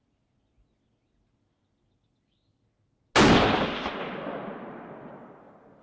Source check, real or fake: real